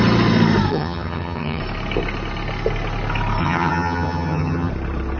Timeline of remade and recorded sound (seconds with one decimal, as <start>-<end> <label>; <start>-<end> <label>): 0.0-0.7 recorded; 0.7-1.6 remade; 1.6-3.4 recorded; 3.4-4.7 remade; 4.7-5.2 recorded